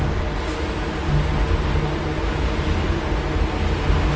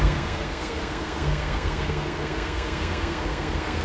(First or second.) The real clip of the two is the first